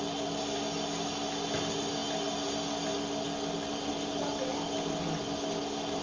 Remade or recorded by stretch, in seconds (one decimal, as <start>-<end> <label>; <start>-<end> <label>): 0.0-6.0 recorded